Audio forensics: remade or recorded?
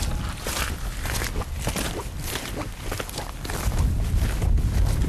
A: recorded